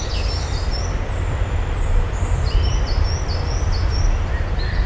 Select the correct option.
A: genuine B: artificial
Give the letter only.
A